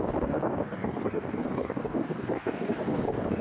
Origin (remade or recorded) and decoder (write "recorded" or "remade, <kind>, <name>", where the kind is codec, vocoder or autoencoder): remade, codec, DAC